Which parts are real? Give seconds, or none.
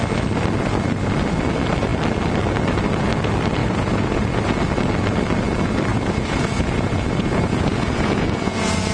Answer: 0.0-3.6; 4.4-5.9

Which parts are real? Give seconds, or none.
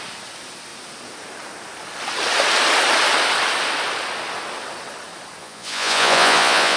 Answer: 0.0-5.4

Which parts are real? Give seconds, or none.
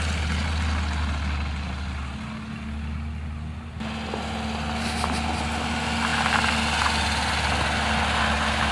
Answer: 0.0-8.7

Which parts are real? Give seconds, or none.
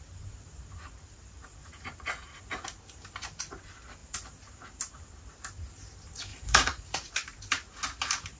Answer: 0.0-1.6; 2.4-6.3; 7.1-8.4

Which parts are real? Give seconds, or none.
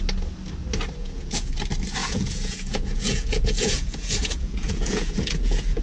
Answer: 0.0-1.0; 1.5-2.0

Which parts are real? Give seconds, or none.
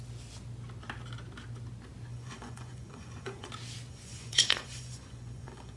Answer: 0.0-2.1; 3.5-3.9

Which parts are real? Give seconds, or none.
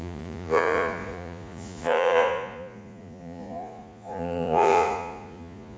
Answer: none